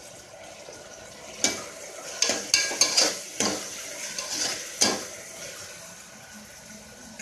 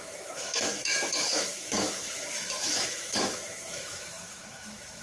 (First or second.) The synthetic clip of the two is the second